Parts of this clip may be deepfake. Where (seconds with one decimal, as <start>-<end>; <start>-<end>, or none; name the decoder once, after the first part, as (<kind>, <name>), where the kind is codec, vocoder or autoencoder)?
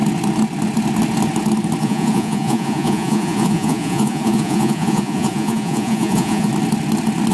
1.8-6.5 (vocoder, Vocos)